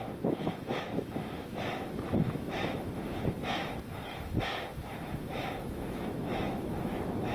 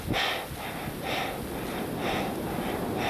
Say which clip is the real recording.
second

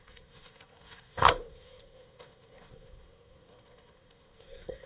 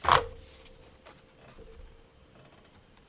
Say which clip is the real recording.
second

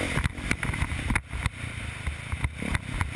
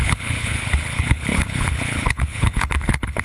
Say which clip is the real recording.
first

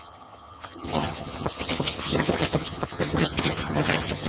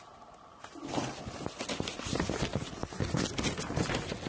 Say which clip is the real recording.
second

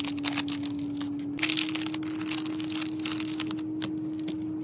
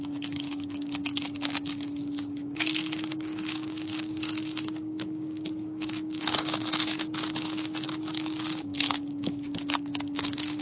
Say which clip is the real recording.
first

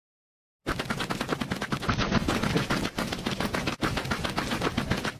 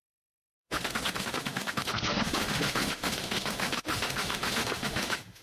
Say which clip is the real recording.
first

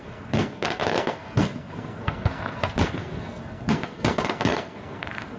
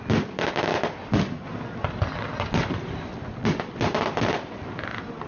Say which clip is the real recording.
second